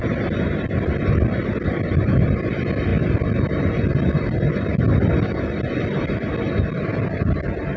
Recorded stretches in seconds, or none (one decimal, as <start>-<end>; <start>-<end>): none